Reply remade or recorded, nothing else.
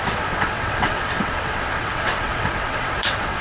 remade